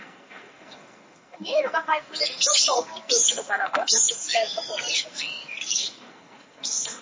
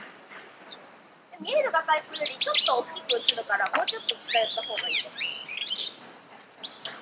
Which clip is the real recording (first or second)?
second